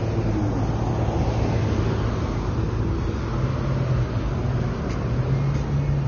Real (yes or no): yes